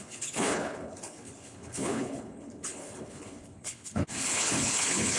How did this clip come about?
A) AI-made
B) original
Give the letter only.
A